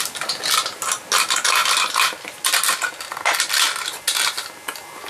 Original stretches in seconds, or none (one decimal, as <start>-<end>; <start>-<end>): 0.0-5.1